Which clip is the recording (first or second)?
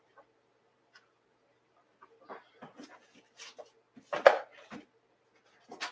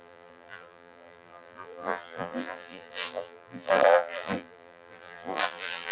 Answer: first